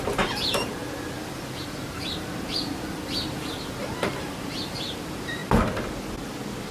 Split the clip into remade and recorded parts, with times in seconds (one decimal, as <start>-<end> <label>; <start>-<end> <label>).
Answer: 0.0-0.8 remade; 0.8-1.6 recorded; 1.6-5.4 remade; 5.4-6.7 recorded